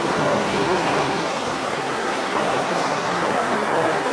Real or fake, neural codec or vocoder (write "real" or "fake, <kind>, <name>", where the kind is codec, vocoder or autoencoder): fake, codec, SNAC